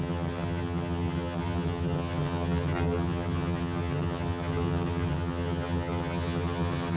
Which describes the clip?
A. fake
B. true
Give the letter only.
A